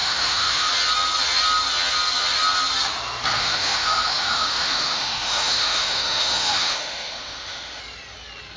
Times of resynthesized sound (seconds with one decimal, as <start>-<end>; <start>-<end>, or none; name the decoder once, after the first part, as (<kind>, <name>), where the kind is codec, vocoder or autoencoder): 0.0-0.7 (autoencoder, DAC-VAE); 3.4-7.8